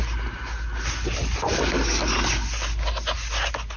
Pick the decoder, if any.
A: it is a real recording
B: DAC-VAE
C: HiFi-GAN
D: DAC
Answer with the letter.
A